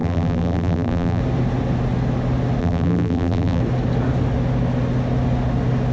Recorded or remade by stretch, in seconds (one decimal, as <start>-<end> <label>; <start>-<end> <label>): 0.0-1.2 remade; 1.2-2.6 recorded; 2.6-3.6 remade; 3.6-5.9 recorded

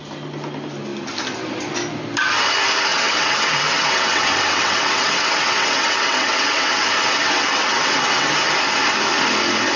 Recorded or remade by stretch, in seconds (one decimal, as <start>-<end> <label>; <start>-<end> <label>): 0.0-2.9 recorded; 2.9-6.8 remade; 6.8-7.2 recorded; 7.2-8.3 remade; 8.3-9.8 recorded

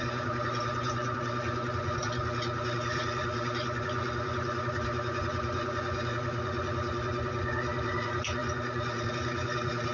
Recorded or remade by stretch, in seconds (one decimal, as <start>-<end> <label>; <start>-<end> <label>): 0.0-9.9 remade

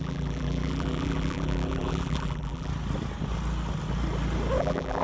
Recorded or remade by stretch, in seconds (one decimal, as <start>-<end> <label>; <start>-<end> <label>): 0.0-2.7 remade; 2.7-4.6 recorded; 4.6-5.0 remade

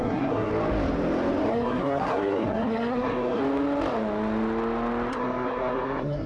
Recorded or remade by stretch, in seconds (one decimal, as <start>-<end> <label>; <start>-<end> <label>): 0.0-0.5 remade; 0.5-1.5 recorded; 1.5-3.4 remade; 3.4-5.1 recorded; 5.1-6.3 remade

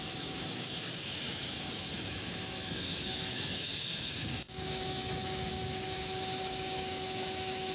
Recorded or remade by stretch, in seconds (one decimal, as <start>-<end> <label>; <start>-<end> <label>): 0.0-7.7 remade